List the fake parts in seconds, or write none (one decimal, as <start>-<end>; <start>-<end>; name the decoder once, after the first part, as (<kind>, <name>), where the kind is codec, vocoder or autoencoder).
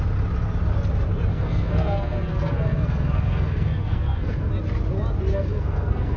1.3-4.5 (codec, SNAC); 5.3-6.2